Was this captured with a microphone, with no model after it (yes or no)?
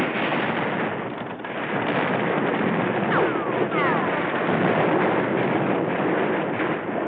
yes